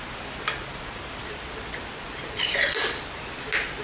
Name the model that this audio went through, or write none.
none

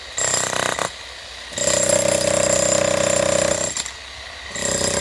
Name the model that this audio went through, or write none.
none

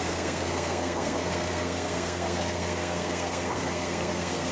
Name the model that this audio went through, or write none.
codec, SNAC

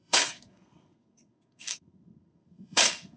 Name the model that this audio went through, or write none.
codec, SNAC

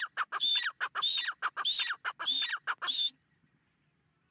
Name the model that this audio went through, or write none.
none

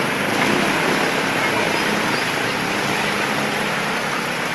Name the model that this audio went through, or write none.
none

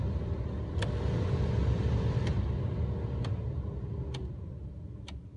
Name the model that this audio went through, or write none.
none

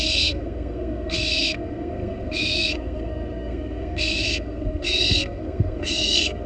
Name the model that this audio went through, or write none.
codec, SNAC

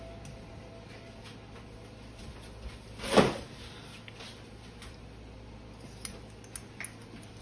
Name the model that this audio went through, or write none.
none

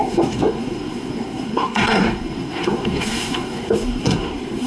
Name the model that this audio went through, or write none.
codec, SNAC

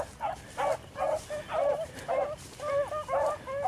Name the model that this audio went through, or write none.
none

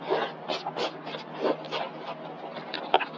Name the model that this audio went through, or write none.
none